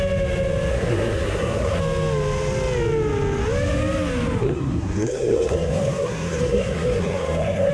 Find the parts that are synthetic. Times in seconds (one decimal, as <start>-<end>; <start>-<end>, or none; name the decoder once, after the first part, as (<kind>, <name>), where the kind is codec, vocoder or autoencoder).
0.7-1.8 (codec, SNAC); 4.4-7.7